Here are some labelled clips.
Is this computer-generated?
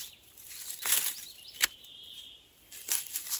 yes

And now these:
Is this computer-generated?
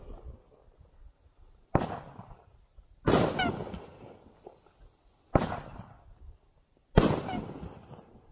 no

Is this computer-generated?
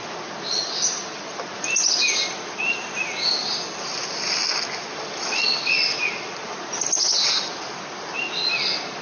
no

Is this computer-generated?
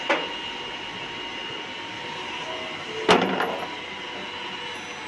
no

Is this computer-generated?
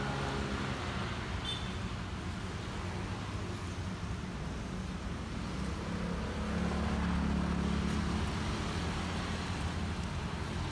no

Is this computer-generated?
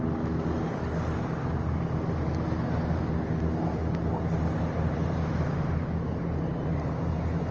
no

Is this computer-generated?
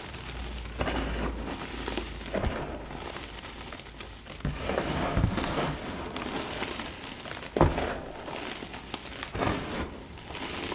no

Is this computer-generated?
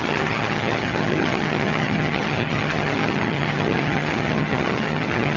yes